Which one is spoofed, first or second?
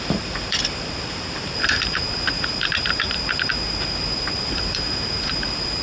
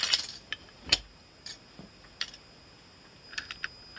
first